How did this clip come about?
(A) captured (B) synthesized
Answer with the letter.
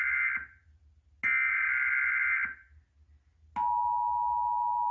A